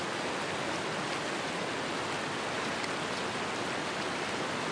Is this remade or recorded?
recorded